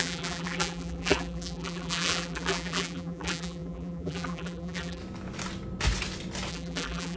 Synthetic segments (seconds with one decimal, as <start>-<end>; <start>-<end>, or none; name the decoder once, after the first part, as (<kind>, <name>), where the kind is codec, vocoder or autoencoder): 0.0-5.0 (vocoder, BigVGAN v2); 6.5-7.2